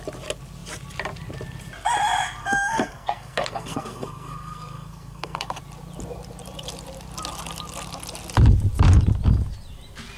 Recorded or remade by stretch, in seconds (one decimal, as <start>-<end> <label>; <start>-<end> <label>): 0.0-2.4 recorded; 2.4-5.6 remade; 5.6-10.2 recorded